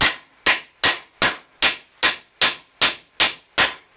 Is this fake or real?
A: real